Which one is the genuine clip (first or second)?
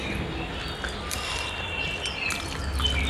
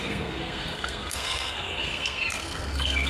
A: first